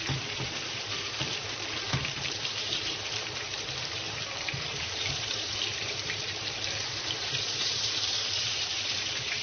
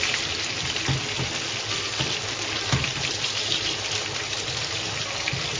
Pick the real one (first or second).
second